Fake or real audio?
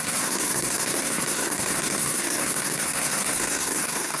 fake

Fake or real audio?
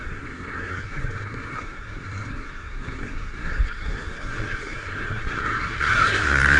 fake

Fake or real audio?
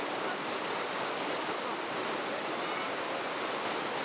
real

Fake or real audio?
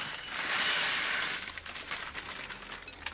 real